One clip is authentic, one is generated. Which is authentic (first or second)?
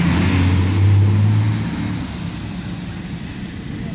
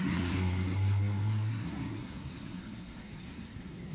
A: first